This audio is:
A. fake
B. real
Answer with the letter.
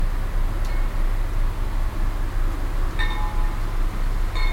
B